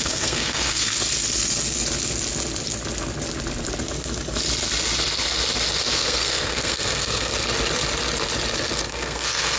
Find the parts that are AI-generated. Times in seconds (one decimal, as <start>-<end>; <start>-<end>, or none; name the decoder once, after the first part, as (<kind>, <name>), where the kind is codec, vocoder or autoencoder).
0.0-0.9 (codec, SNAC); 5.8-7.3; 8.9-9.6